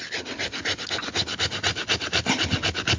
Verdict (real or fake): real